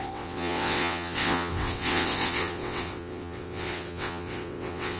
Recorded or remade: remade